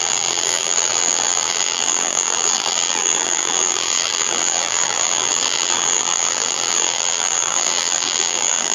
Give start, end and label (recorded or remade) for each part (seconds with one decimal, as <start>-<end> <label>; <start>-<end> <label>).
0.0-8.7 remade